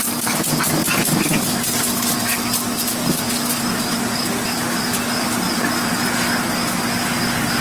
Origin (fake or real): real